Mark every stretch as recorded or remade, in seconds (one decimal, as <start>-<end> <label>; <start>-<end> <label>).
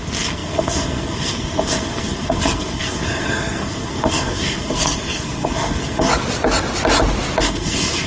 0.0-6.1 remade; 6.1-7.4 recorded; 7.4-8.1 remade